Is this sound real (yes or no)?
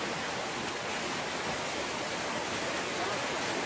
yes